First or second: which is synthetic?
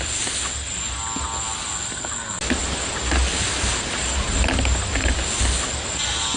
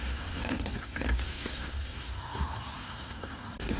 second